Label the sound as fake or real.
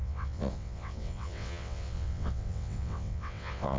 fake